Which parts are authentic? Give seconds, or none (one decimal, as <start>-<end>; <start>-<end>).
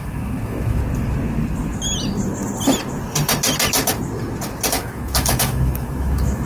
0.8-4.7